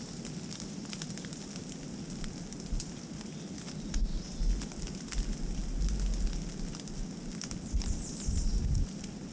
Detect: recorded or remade recorded